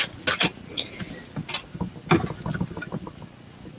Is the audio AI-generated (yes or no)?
no